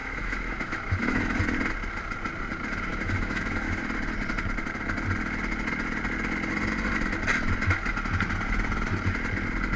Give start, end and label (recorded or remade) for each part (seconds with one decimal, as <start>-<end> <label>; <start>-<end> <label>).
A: 0.0-1.4 remade; 1.4-2.9 recorded; 2.9-3.8 remade; 3.8-9.8 recorded